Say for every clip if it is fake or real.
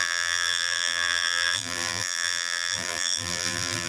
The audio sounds fake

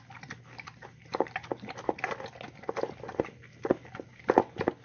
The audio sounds real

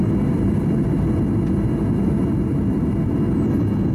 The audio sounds real